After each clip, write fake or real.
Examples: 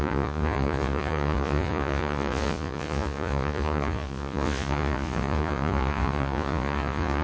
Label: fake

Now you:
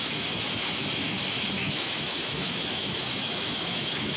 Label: fake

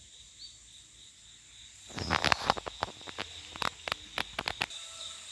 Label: real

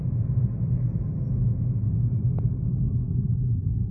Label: real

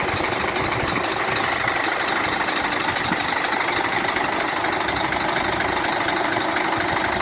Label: real